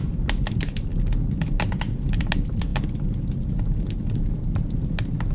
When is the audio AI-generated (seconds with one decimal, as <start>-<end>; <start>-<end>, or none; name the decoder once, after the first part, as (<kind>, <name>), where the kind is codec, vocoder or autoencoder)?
none